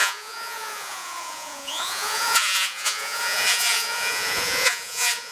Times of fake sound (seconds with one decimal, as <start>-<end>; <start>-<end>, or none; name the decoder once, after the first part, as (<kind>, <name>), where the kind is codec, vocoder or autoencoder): 0.0-5.3 (vocoder, Vocos)